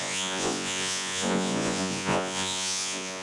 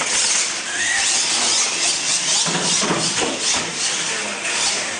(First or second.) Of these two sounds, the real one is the second